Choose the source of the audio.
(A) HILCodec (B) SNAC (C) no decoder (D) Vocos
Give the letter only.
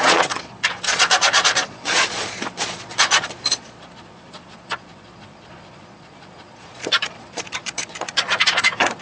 D